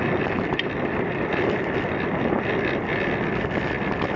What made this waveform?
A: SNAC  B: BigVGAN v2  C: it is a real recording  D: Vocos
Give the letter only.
C